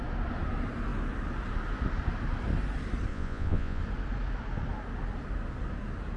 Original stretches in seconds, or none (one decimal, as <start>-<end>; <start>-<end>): 0.0-3.1; 3.8-6.2